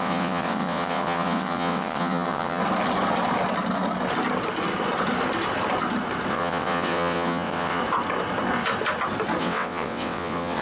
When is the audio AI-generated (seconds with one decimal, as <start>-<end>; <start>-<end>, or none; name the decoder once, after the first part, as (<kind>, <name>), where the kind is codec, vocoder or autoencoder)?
0.0-2.6 (vocoder, WaveNeXt); 6.3-7.8; 9.4-10.6